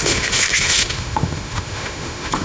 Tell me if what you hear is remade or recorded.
remade